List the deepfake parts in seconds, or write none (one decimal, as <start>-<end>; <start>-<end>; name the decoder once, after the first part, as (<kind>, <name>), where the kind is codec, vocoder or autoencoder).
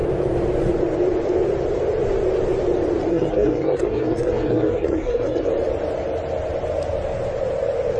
3.1-5.5 (codec, SNAC)